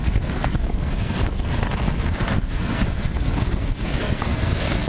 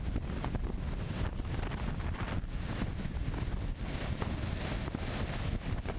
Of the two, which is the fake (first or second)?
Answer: first